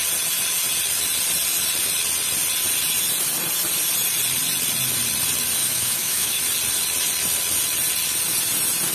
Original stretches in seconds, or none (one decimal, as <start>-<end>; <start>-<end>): 0.0-5.6; 6.4-8.9